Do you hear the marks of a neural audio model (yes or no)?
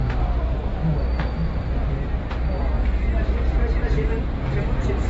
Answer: no